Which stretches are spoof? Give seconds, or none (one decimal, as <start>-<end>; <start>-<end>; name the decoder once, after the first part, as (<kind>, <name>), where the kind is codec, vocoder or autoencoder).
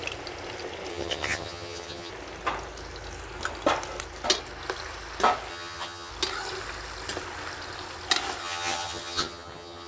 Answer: 0.9-2.1 (vocoder, HiFi-GAN); 5.5-6.1; 8.4-9.9